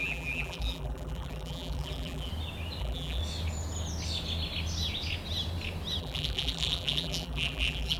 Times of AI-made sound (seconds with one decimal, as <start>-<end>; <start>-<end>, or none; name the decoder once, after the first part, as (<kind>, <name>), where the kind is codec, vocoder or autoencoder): 0.0-2.3 (vocoder, BigVGAN v2); 2.8-3.2; 6.0-8.0